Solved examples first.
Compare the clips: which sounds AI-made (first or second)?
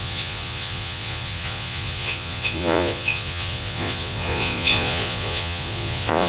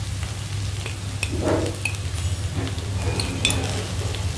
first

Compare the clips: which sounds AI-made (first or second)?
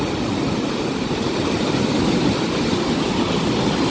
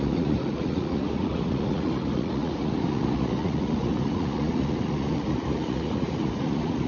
second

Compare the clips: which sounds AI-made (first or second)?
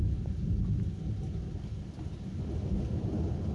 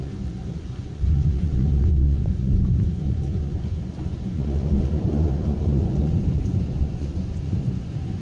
second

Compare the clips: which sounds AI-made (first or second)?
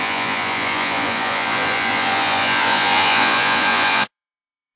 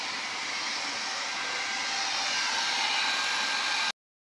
first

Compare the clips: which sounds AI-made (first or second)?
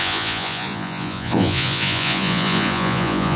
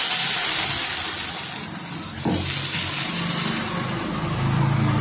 first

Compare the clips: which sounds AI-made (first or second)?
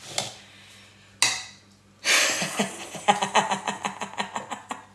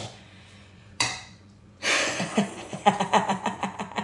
second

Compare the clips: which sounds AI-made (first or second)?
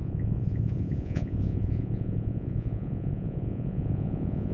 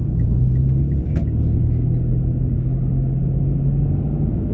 first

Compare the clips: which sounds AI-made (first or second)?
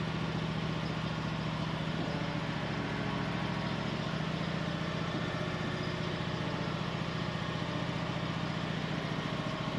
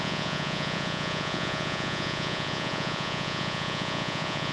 second